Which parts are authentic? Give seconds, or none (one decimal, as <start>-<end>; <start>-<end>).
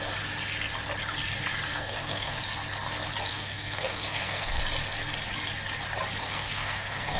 0.0-1.7; 2.4-3.3; 4.6-6.2